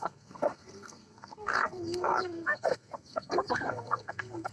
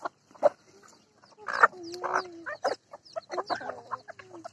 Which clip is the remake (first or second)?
first